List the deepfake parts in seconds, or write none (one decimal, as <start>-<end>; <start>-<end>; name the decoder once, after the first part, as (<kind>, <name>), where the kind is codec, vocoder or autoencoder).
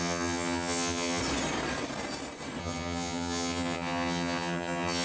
0.0-1.2 (vocoder, HiFi-GAN); 2.6-5.0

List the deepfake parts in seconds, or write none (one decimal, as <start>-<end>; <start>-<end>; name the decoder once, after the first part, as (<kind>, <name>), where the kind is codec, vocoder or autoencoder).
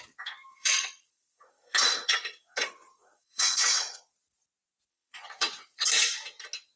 0.5-4.0 (vocoder, WaveNeXt); 4.9-5.9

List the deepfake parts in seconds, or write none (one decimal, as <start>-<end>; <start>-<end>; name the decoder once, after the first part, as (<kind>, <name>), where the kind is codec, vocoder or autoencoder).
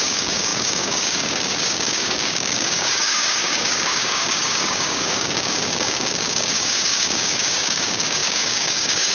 0.0-9.1 (codec, DAC)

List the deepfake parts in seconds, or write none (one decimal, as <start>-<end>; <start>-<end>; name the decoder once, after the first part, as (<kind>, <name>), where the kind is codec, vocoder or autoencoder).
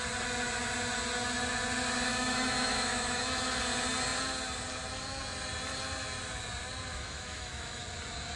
2.1-3.6 (autoencoder, DAC-VAE); 6.9-7.8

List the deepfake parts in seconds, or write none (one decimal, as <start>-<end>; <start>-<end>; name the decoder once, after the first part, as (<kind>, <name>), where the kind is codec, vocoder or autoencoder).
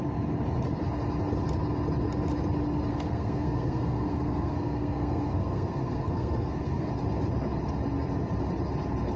2.9-6.9 (codec, SNAC)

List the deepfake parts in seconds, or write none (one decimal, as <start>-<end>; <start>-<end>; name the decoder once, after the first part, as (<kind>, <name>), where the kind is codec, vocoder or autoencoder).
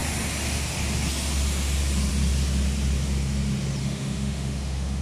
3.8-5.0 (autoencoder, DAC-VAE)